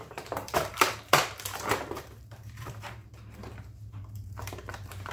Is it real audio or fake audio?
fake